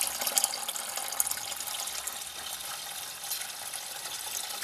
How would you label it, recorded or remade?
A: recorded